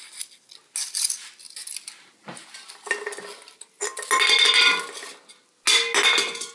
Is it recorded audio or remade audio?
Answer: recorded